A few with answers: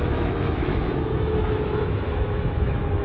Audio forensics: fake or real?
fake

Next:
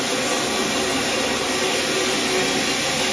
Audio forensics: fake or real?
real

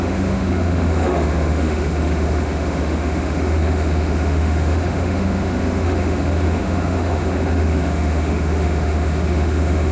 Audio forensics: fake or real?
fake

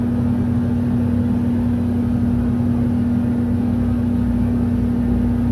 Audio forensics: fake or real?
real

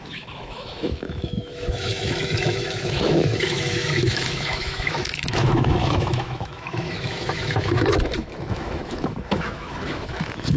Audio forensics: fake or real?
fake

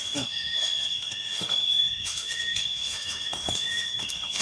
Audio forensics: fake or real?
fake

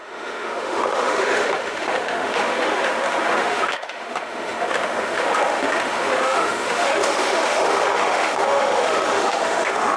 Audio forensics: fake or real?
fake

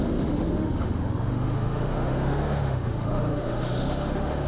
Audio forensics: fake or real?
fake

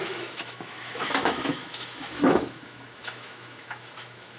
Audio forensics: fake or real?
fake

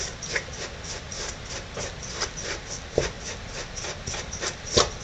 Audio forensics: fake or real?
real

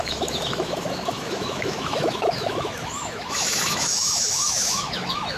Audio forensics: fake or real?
fake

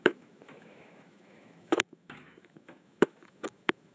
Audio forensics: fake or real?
fake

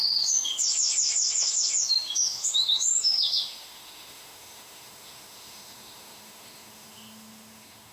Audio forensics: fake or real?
fake